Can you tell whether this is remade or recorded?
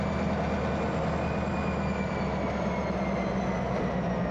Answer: recorded